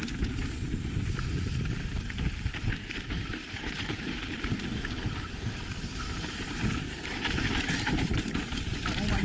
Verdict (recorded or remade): remade